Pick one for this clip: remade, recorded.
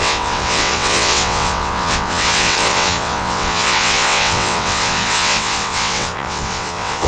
remade